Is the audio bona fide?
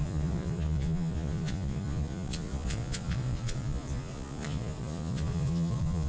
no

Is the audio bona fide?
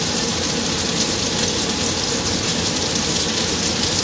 yes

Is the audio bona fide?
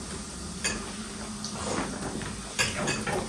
yes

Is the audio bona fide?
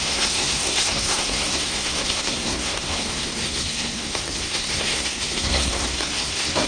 no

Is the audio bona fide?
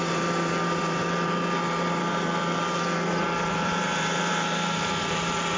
no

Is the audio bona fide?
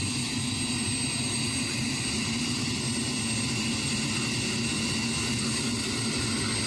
yes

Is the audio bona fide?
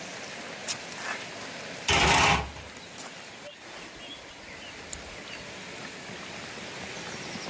yes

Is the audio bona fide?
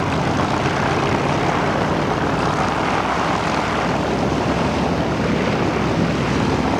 yes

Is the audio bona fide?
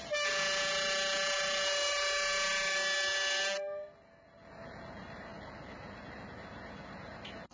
yes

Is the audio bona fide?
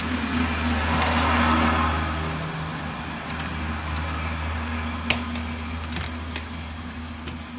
yes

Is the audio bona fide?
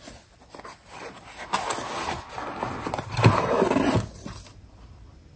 yes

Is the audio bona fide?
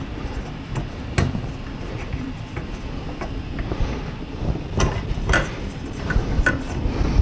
yes